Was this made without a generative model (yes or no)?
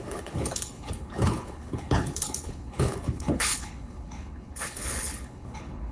no